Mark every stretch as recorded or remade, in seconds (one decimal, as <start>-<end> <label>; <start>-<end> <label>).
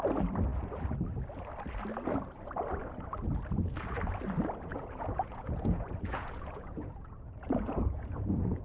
0.0-4.7 recorded; 4.7-8.6 remade